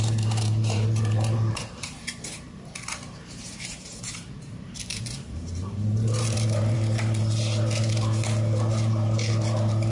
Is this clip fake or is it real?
fake